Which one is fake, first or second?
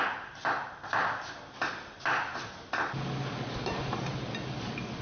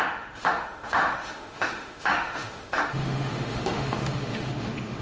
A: second